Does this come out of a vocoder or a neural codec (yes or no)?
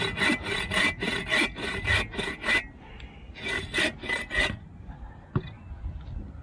no